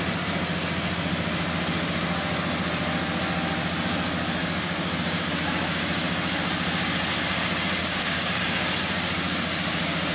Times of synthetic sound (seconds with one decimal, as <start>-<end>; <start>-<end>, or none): 4.4-5.3; 7.8-8.4